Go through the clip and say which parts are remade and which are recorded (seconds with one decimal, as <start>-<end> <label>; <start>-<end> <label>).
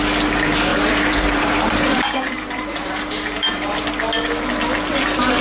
0.0-0.7 recorded; 0.7-3.9 remade; 3.9-5.4 recorded